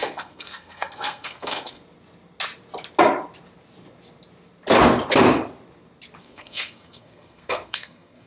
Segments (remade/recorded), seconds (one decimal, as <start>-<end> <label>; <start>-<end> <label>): 0.0-1.8 remade; 1.8-6.2 recorded; 6.2-8.3 remade